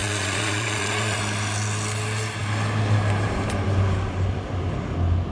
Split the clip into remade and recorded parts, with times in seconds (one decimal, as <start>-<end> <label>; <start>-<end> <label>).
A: 0.0-1.2 remade; 1.2-5.3 recorded